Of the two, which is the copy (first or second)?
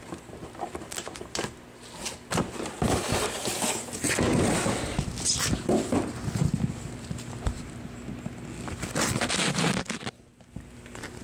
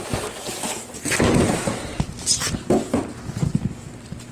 first